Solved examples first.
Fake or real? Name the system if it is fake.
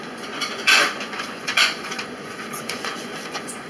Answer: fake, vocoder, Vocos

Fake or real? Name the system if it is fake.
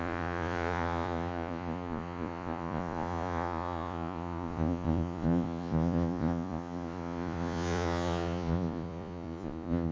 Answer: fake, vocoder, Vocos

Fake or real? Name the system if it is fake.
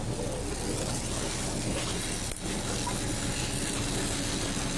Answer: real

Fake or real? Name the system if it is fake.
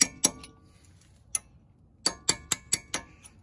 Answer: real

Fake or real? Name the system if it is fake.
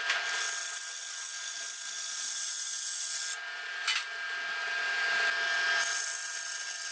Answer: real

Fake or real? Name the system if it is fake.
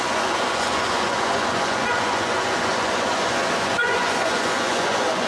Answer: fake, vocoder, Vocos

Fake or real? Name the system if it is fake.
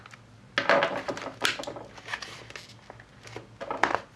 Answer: real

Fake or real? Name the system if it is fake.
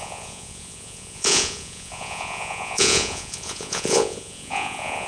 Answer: fake, vocoder, Vocos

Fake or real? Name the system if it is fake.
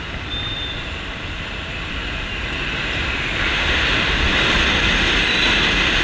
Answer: real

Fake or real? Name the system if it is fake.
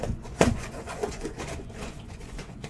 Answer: fake, vocoder, Vocos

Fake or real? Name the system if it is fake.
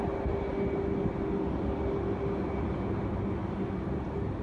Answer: real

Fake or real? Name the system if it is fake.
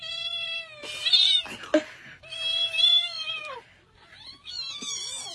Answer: real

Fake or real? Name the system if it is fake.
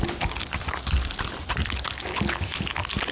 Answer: real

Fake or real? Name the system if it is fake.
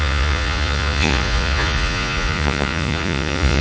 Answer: fake, vocoder, Vocos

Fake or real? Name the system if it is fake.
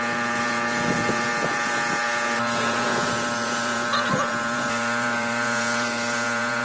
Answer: fake, vocoder, Vocos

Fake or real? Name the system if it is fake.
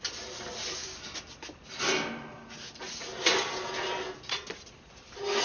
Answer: real